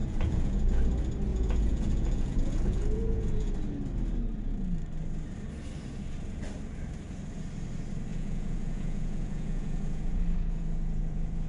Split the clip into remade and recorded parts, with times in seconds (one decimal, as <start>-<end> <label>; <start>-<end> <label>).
0.0-0.8 remade; 0.8-1.3 recorded; 1.3-3.5 remade; 3.5-8.1 recorded; 8.1-11.5 remade